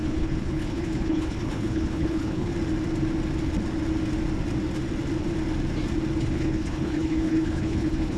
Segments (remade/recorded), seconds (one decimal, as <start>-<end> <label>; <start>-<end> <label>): 0.0-2.5 remade; 2.5-6.2 recorded; 6.2-8.2 remade